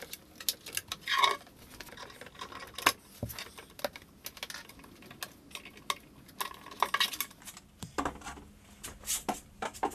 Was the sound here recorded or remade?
recorded